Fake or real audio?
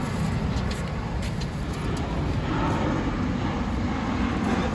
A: real